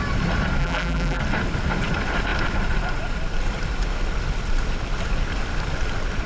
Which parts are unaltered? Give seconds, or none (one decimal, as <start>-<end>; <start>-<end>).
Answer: 0.0-0.6; 1.2-6.3